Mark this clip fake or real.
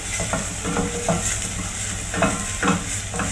real